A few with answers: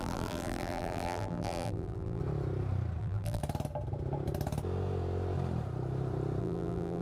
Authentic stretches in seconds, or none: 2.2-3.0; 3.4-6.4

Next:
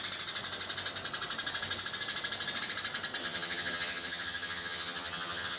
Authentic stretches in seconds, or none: 0.0-3.2